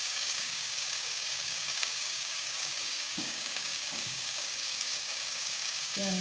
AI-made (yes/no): yes